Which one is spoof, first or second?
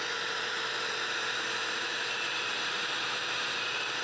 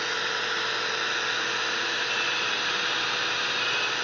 first